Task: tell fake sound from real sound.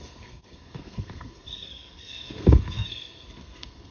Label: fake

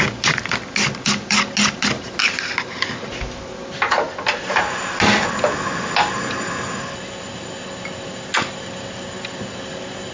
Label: real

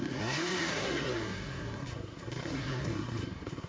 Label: fake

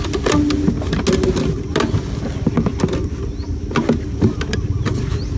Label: real